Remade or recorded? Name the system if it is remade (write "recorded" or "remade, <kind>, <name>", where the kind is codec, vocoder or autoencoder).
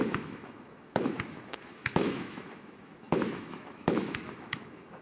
remade, autoencoder, DAC-VAE